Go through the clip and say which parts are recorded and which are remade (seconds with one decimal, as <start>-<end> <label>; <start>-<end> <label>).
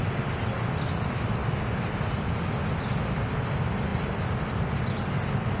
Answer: 0.0-5.6 recorded